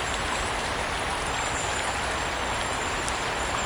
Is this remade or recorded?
recorded